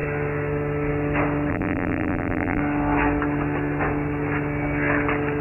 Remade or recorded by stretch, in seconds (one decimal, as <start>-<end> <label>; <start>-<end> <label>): 0.0-1.5 recorded; 1.5-2.6 remade; 2.6-5.4 recorded